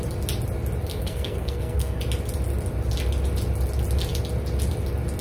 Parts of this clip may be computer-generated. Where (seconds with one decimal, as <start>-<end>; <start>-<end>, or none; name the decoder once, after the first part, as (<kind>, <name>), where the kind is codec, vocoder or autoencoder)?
0.9-2.0 (codec, SNAC)